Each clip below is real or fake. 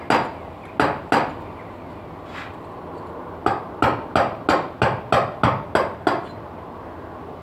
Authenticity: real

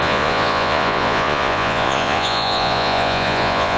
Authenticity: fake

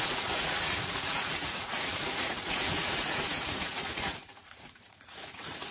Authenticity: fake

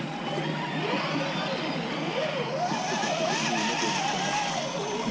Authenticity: real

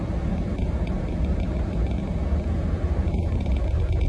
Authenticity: real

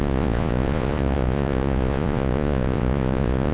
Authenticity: fake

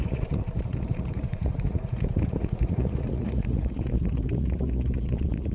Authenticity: fake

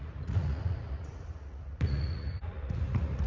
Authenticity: fake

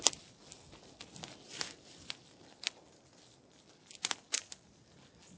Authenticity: real